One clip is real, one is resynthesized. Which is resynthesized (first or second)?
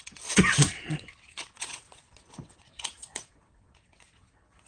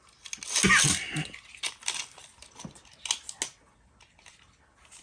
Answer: first